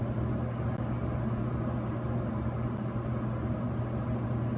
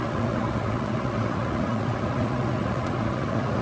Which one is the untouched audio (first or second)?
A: first